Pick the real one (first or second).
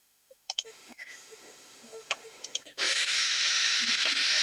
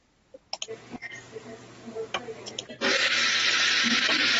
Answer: second